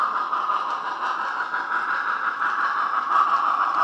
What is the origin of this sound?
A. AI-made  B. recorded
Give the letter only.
B